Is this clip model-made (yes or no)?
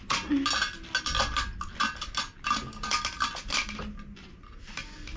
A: no